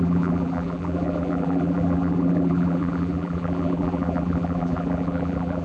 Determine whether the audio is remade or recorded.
remade